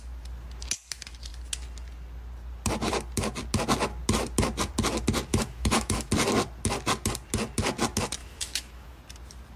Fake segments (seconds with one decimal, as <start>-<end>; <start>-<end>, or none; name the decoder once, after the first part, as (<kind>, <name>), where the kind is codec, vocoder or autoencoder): 5.3-6.1 (autoencoder, DAC-VAE); 8.2-9.0